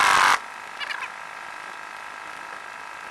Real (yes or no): yes